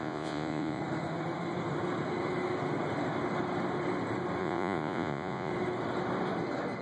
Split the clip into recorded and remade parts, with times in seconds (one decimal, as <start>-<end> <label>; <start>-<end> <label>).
0.0-0.8 remade; 0.8-4.4 recorded; 4.4-5.5 remade; 5.5-6.8 recorded